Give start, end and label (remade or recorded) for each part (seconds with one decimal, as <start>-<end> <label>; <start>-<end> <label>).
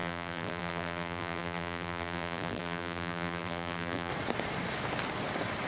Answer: 0.0-4.1 remade; 4.1-5.7 recorded